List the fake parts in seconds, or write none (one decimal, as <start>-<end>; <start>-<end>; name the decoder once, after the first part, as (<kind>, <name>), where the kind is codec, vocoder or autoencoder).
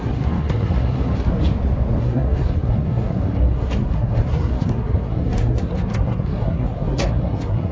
0.0-1.3 (codec, SNAC); 2.0-7.7